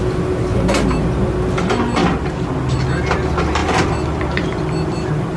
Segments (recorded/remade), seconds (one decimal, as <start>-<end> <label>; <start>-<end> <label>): 0.0-3.6 recorded; 3.6-5.4 remade